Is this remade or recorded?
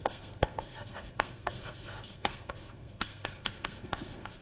remade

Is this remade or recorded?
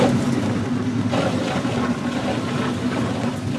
recorded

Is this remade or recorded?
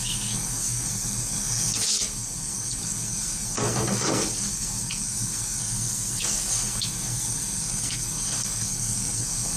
remade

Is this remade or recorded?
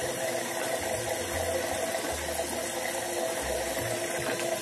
recorded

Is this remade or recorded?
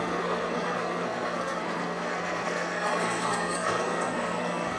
remade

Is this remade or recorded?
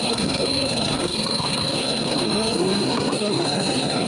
remade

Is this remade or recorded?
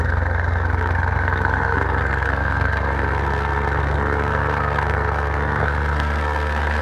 remade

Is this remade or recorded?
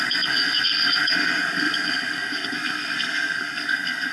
remade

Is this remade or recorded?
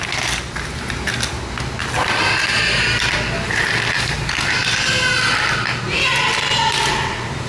recorded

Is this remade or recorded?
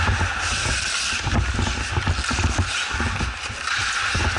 recorded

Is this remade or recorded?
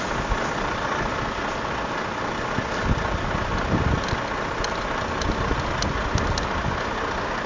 recorded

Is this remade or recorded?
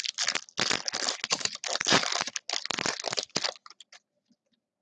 recorded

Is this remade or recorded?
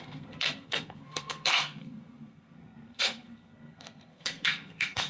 remade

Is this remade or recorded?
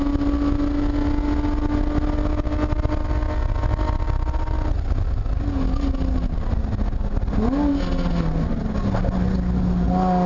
recorded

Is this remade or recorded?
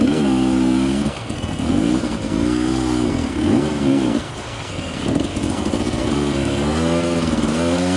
remade